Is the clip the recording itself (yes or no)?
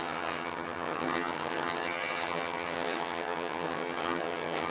no